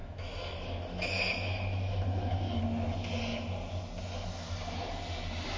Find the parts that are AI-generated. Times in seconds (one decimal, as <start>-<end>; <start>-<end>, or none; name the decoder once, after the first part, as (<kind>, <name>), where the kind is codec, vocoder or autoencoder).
0.0-2.6 (autoencoder, DAC-VAE)